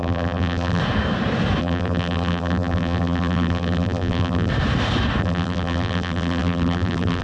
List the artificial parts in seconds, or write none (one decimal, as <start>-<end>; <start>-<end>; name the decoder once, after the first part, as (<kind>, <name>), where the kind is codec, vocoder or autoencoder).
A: 0.0-0.8 (vocoder, BigVGAN v2); 1.6-4.5; 5.2-7.2